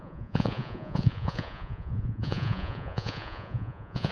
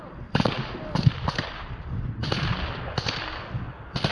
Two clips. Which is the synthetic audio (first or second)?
first